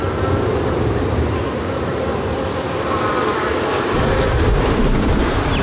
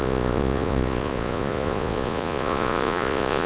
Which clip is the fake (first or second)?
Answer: second